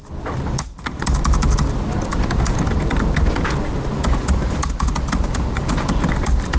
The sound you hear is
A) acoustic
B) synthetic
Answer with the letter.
A